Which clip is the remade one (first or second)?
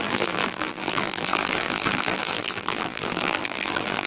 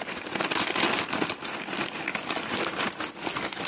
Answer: first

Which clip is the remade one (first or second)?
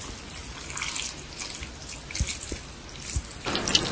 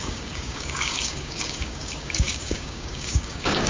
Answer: second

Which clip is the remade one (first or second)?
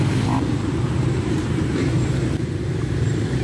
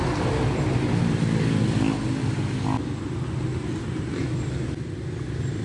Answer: first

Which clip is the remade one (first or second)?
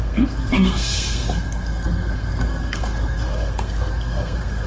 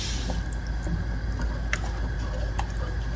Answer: first